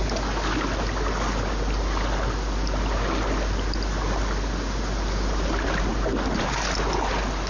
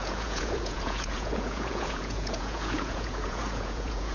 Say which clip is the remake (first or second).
second